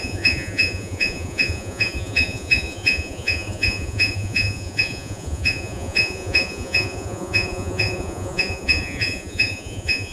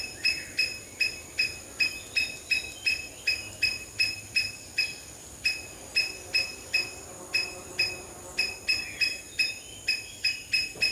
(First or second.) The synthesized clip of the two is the first